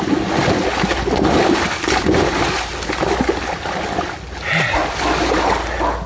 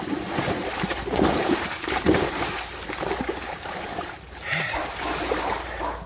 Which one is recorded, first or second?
first